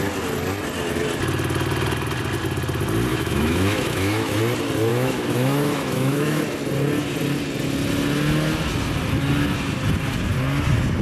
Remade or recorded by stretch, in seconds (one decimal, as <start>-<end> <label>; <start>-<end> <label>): 0.0-3.1 recorded; 3.1-4.4 remade; 4.4-4.9 recorded; 4.9-6.4 remade; 6.4-11.0 recorded